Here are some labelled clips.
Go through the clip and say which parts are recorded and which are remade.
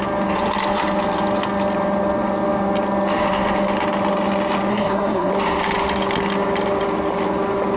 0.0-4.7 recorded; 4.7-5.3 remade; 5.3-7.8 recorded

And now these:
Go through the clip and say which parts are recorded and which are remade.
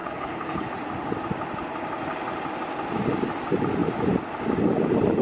0.0-0.7 remade; 0.7-5.2 recorded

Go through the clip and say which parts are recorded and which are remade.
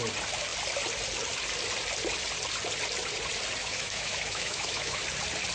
0.0-3.6 recorded; 3.6-5.0 remade; 5.0-5.5 recorded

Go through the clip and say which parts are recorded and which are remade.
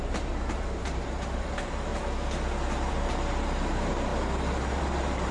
0.0-1.9 remade; 1.9-2.9 recorded; 2.9-4.1 remade; 4.1-4.8 recorded; 4.8-5.3 remade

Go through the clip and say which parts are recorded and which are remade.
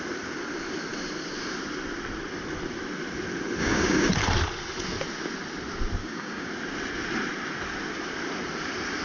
0.0-3.6 recorded; 3.6-4.1 remade; 4.1-6.0 recorded; 6.0-6.5 remade; 6.5-9.0 recorded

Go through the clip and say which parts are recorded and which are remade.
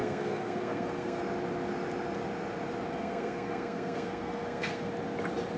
0.0-1.2 remade; 1.2-2.9 recorded; 2.9-4.9 remade; 4.9-5.6 recorded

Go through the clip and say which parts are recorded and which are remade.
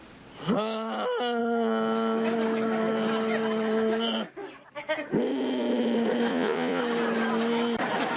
0.0-6.3 recorded; 6.3-6.8 remade; 6.8-8.2 recorded